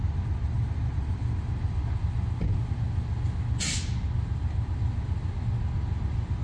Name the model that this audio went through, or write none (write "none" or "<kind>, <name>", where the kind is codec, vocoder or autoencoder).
none